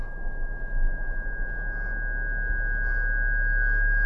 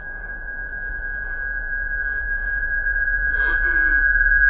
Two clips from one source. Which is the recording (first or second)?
first